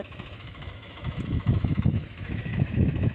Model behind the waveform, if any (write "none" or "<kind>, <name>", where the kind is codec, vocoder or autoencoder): autoencoder, DAC-VAE